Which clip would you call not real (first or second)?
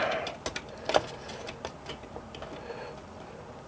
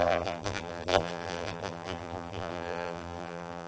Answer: second